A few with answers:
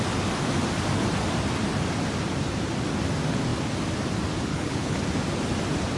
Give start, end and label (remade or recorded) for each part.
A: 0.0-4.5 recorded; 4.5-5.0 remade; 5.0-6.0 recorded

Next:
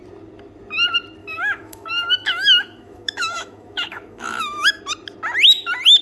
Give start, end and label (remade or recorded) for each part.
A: 0.0-1.2 recorded; 1.2-4.8 remade; 4.8-6.0 recorded